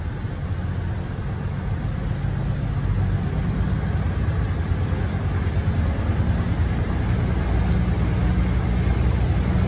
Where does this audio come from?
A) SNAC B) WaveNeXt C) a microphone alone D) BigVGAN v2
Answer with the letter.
C